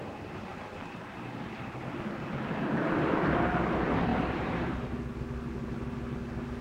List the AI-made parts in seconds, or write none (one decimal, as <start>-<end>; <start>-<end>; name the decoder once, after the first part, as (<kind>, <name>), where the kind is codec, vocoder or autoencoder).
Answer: 4.1-5.0 (vocoder, BigVGAN v2)